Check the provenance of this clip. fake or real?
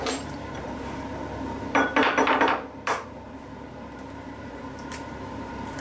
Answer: fake